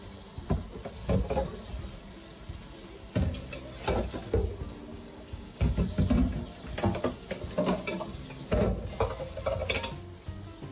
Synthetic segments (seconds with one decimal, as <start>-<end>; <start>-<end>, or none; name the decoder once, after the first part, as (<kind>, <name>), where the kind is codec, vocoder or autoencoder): 4.9-5.7 (codec, DAC)